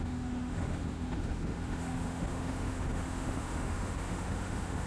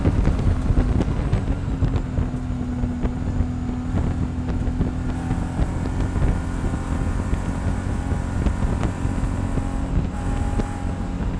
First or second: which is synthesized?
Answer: first